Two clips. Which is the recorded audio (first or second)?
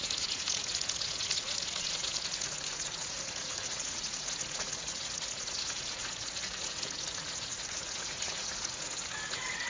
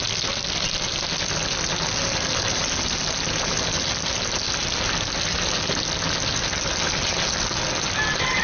second